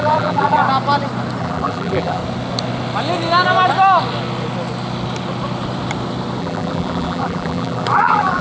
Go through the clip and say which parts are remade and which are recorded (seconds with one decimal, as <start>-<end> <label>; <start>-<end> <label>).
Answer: 0.0-0.6 remade; 0.6-1.4 recorded; 1.4-2.2 remade; 2.2-6.4 recorded; 6.4-8.4 remade